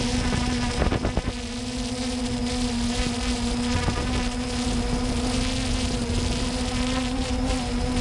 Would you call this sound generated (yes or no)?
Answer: no